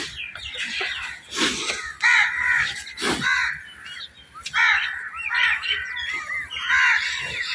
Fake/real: real